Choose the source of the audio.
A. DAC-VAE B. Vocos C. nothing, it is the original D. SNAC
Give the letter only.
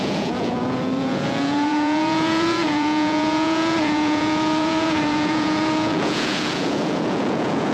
B